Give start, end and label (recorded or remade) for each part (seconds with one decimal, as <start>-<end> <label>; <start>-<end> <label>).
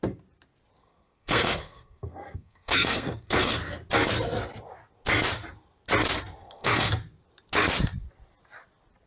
0.0-0.8 recorded; 0.8-3.6 remade; 3.6-6.4 recorded; 6.4-6.9 remade; 6.9-9.1 recorded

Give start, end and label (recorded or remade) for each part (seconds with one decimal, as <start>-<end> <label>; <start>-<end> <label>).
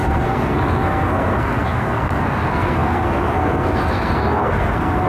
0.0-5.1 remade